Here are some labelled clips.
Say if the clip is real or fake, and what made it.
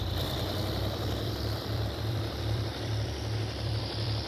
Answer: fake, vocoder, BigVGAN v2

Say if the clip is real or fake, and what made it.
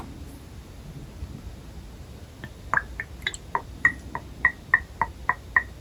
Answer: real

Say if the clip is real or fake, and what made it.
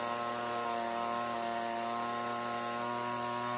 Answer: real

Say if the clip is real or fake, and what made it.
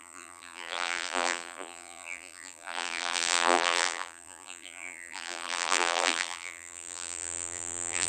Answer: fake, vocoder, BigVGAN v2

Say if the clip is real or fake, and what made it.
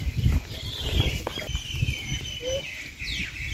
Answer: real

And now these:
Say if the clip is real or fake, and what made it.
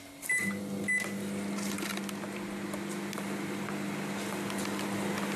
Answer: real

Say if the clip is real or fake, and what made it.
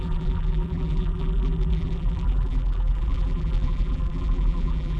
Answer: fake, vocoder, BigVGAN v2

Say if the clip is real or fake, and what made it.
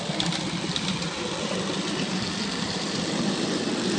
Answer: fake, vocoder, BigVGAN v2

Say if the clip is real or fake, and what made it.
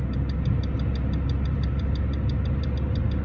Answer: real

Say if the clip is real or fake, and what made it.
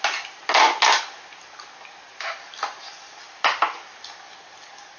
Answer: real